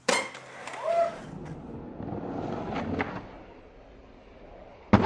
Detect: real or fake real